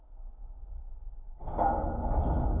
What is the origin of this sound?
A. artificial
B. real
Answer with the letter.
B